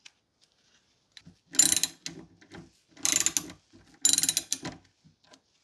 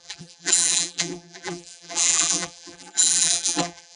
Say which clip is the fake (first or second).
second